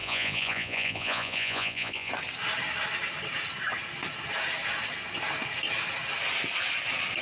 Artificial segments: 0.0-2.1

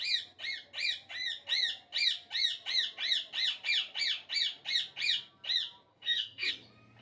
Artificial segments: 5.9-6.5